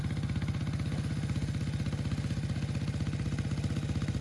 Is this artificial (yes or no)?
no